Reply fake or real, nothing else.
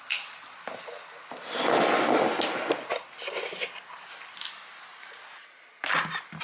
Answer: real